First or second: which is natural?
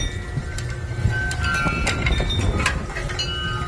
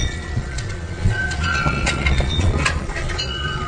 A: first